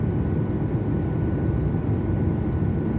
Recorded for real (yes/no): yes